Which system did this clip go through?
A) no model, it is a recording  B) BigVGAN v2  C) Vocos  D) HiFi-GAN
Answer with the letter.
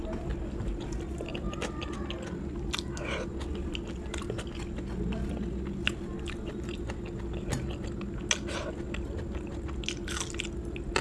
A